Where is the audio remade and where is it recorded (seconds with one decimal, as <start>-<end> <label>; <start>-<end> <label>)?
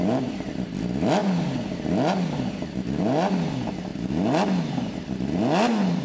0.0-6.0 recorded